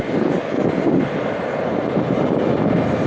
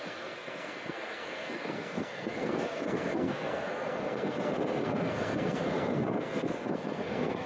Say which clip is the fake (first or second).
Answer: second